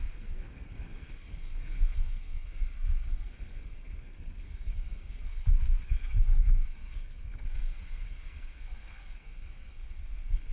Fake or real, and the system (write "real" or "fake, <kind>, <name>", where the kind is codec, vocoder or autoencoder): fake, codec, SNAC